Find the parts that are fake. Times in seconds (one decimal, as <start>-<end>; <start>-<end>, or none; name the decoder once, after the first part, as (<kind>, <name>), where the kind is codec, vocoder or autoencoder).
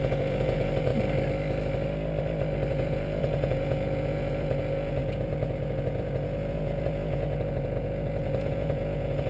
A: 0.0-0.9 (vocoder, Vocos); 2.7-9.3